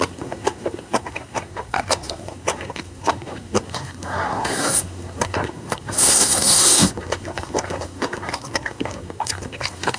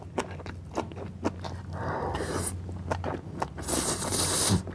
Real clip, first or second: second